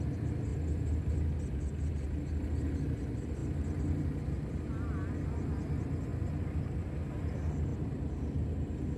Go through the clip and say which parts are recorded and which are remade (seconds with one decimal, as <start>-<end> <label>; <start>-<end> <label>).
0.0-9.0 recorded